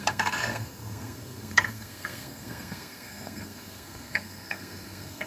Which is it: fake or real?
fake